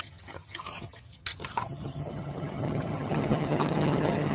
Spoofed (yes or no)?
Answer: yes